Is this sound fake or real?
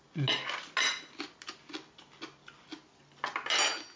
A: real